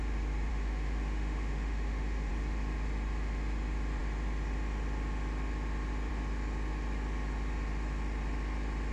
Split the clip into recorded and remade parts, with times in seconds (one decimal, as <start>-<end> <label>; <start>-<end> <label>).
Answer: 0.0-0.5 recorded; 0.5-2.3 remade; 2.3-8.9 recorded